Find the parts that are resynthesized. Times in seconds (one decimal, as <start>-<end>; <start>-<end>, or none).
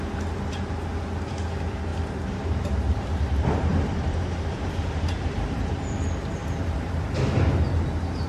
1.9-5.7; 6.4-7.1